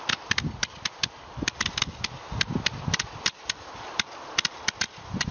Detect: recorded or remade recorded